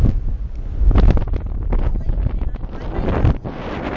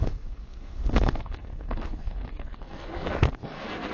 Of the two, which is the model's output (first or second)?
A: second